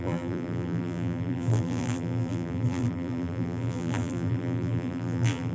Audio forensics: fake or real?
fake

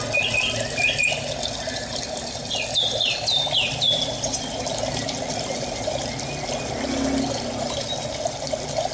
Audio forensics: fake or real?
real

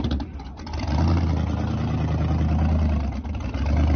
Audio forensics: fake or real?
real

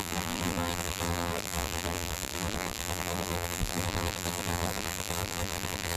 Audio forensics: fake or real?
fake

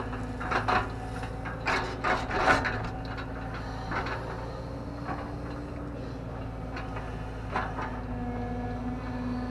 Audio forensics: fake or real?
real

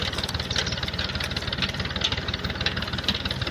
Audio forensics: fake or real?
real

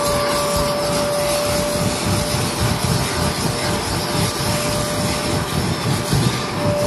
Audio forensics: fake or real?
real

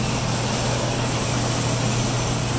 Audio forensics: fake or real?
real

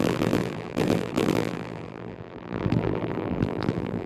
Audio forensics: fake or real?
fake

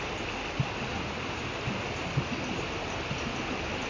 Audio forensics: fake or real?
real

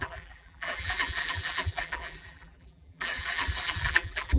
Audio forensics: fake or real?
fake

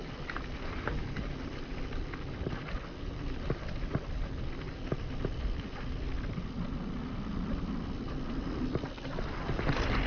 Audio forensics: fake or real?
fake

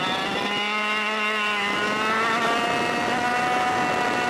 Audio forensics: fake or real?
real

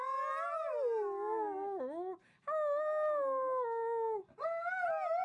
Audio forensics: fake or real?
real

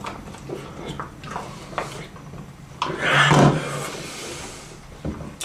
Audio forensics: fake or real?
real